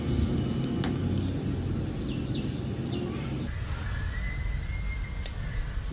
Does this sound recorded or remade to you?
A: recorded